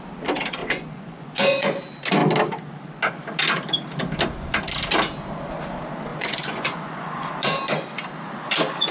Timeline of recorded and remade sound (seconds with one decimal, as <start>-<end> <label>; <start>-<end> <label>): 0.0-0.6 recorded; 0.6-1.8 remade; 1.8-6.1 recorded; 6.1-7.3 remade; 7.3-8.9 recorded